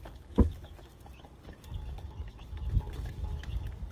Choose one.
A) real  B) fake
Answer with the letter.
B